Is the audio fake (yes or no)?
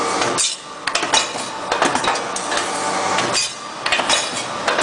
no